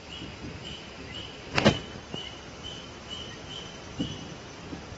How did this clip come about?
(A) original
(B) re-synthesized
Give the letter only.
B